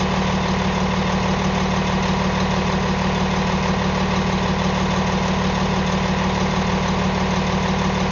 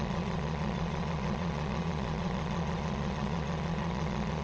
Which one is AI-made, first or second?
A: second